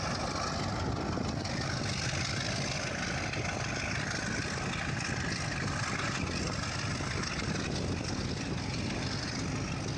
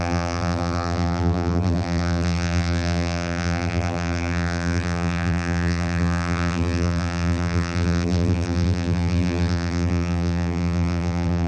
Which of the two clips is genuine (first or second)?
first